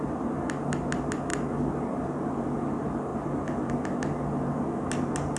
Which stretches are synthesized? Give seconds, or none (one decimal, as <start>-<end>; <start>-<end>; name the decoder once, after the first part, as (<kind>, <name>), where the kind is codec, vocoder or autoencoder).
3.1-3.7 (vocoder, BigVGAN v2)